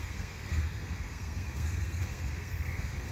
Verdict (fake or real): fake